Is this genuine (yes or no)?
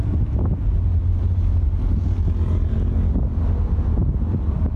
yes